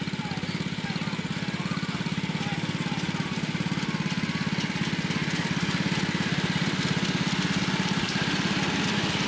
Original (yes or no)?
yes